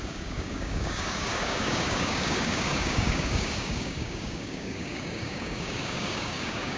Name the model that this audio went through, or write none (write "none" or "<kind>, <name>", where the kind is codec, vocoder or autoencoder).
codec, DAC